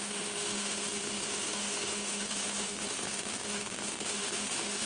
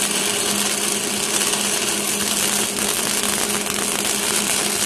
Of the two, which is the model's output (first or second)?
first